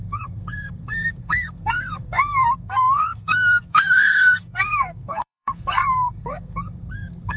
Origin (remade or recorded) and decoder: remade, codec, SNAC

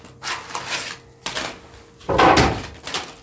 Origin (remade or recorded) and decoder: recorded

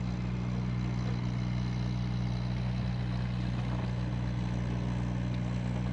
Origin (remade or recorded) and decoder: recorded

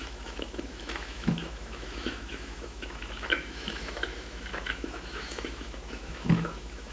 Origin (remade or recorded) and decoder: remade, autoencoder, DAC-VAE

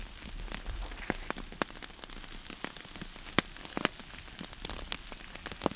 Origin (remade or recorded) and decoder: recorded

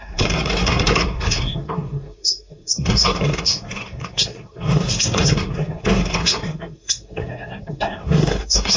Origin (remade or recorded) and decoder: remade, codec, SNAC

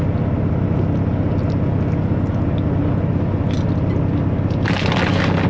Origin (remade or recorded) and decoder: recorded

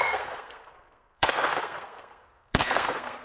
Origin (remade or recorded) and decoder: remade, codec, SNAC